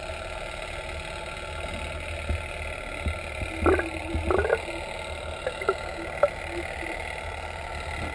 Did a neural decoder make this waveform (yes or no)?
no